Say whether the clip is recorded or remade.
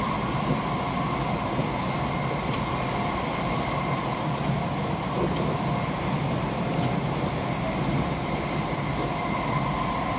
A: recorded